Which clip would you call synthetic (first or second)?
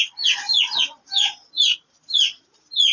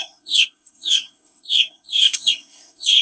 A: second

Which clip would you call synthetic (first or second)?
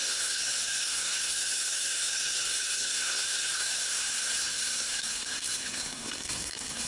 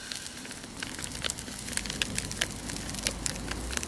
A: first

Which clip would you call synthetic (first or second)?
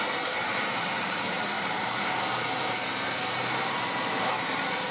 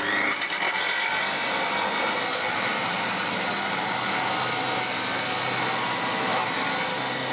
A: first